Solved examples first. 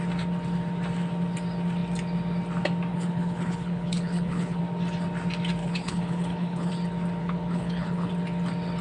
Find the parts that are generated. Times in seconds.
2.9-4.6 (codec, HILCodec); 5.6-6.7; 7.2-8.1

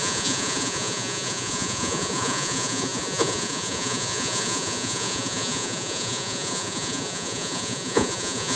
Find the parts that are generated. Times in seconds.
0.0-8.6 (vocoder, Vocos)

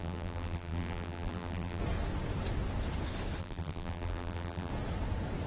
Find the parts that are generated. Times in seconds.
0.0-1.8 (vocoder, BigVGAN v2); 3.4-4.7

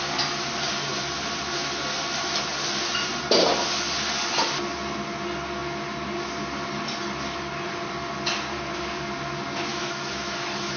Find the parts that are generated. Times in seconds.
9.7-10.8 (autoencoder, DAC-VAE)